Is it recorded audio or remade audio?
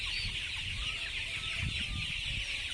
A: recorded